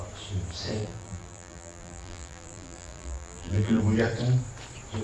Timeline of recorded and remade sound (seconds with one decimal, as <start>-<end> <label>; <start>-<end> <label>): 0.0-0.8 recorded; 0.8-3.8 remade; 3.8-5.0 recorded